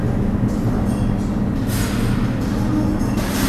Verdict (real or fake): real